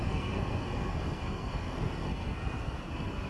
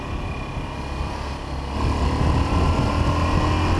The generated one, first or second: first